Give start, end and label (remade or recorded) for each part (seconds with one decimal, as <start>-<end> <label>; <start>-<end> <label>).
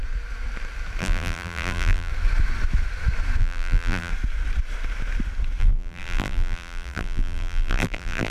0.0-1.0 recorded; 1.0-2.1 remade; 2.1-3.4 recorded; 3.4-4.1 remade; 4.1-5.6 recorded; 5.6-8.3 remade